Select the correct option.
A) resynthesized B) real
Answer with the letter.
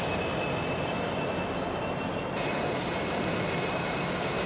B